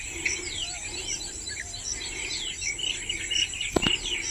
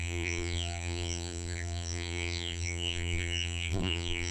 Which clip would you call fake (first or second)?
second